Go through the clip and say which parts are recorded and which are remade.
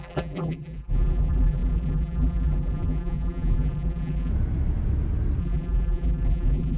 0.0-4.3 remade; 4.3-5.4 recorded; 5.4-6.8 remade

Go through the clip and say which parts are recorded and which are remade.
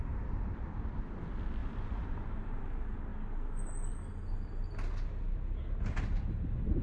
0.0-1.6 recorded; 1.6-2.6 remade; 2.6-6.8 recorded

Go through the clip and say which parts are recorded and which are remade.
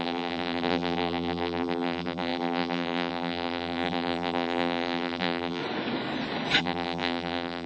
0.0-5.6 remade; 5.6-6.6 recorded; 6.6-7.7 remade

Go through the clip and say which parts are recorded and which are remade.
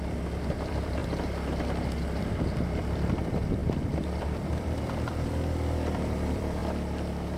0.0-1.0 remade; 1.0-2.2 recorded; 2.2-6.6 remade; 6.6-7.4 recorded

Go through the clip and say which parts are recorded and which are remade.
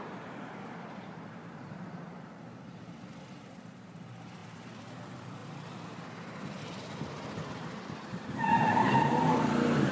0.0-5.4 remade; 5.4-6.6 recorded; 6.6-9.9 remade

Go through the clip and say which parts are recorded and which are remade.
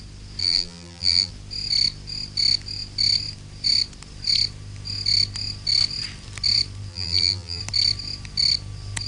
0.0-0.4 recorded; 0.4-1.3 remade; 1.3-6.9 recorded; 6.9-7.6 remade; 7.6-9.1 recorded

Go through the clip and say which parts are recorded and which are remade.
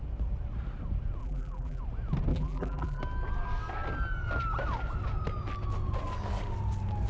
0.0-1.2 recorded; 1.2-1.8 remade; 1.8-2.3 recorded; 2.3-3.0 remade; 3.0-7.1 recorded